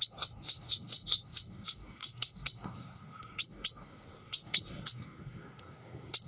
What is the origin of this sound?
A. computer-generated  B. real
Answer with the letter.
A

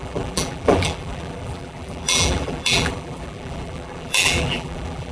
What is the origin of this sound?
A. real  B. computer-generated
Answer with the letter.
B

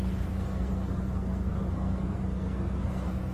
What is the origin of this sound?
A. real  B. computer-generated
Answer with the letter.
B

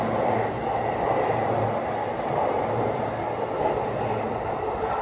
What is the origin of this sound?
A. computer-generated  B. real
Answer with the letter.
B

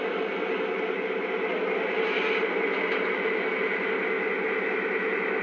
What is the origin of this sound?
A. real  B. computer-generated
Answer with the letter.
A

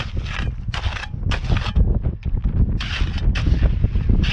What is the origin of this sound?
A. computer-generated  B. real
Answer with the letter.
B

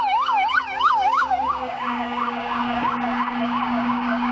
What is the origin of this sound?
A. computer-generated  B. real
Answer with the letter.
A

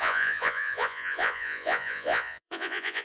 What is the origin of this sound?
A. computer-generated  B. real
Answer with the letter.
A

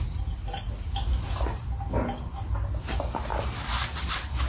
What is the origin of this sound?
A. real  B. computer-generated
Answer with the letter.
A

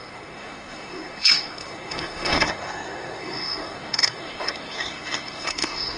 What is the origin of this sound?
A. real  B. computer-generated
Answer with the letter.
B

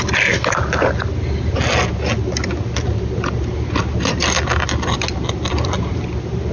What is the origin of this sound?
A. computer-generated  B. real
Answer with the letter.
B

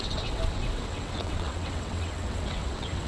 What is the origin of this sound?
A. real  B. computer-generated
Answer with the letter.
B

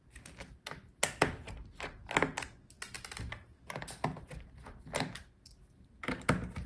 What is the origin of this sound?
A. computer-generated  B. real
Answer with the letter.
B